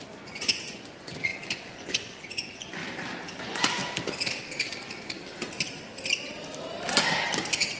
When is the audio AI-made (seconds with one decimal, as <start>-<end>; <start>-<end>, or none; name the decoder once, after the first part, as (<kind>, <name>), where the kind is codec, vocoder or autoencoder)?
0.0-2.8 (vocoder, Vocos); 3.4-3.8